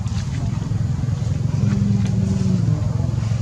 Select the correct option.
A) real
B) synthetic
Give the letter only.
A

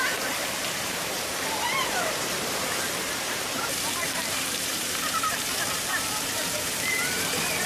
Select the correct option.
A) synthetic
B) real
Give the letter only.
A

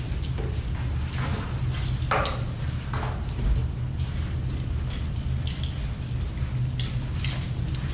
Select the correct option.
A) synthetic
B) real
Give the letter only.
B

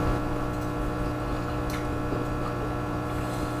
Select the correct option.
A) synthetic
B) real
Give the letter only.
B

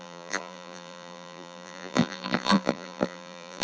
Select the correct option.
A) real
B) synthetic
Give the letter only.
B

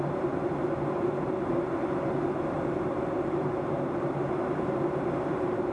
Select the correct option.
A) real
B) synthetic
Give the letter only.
B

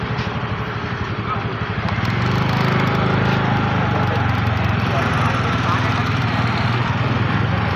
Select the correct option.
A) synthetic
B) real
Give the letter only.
B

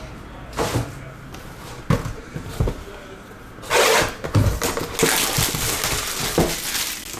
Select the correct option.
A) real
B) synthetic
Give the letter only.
A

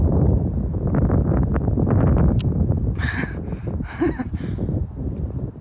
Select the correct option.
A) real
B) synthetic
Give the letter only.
A